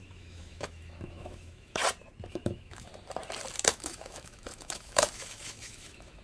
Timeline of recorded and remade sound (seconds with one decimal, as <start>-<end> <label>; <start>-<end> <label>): 0.0-1.8 remade; 1.8-2.3 recorded; 2.3-2.9 remade; 2.9-3.7 recorded; 3.7-6.2 remade